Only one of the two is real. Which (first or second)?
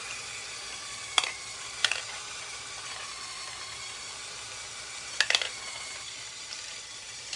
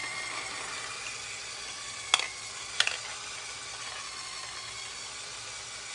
second